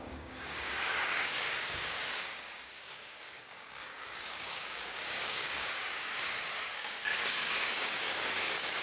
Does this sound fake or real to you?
fake